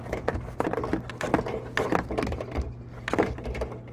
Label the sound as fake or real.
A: real